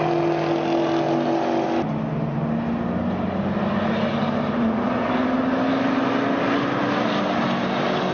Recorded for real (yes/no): yes